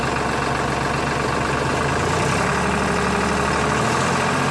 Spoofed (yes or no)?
no